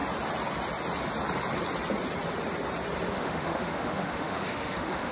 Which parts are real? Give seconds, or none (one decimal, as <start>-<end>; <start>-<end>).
0.0-3.1